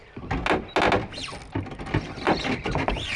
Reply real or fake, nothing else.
real